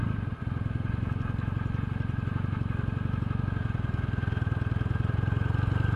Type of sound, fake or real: real